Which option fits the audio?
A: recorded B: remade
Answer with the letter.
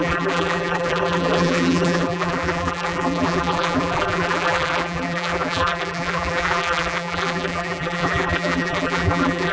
B